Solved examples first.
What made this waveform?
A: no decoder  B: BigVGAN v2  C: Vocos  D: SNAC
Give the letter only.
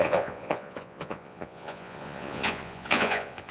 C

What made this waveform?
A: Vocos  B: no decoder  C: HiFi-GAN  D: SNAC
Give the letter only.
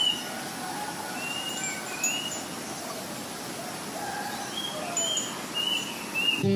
B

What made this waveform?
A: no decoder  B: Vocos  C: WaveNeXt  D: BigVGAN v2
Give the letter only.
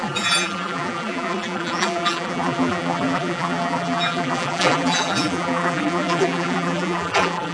D